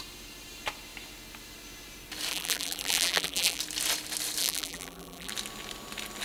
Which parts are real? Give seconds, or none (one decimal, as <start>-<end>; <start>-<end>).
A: 0.0-2.3; 3.6-4.4; 5.3-6.2